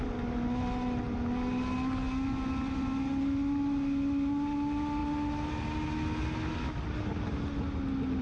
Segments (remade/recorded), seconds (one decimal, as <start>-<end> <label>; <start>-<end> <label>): 0.0-8.2 recorded